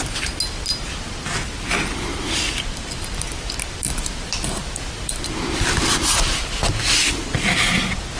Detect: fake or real real